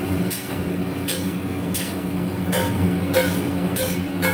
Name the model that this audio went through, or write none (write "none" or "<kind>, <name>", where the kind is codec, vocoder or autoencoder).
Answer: codec, SNAC